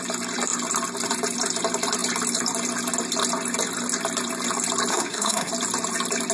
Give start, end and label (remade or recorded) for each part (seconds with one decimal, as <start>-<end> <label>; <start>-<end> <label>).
0.0-4.9 recorded; 4.9-5.5 remade; 5.5-6.3 recorded